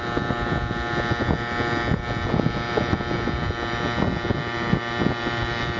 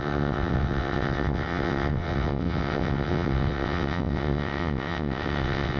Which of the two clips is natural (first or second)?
first